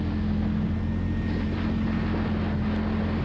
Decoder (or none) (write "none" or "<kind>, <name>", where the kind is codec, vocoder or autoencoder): none